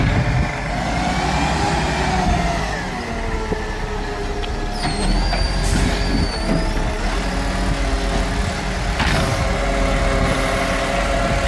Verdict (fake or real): real